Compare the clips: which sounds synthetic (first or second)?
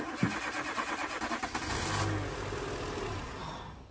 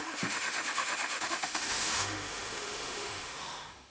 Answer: second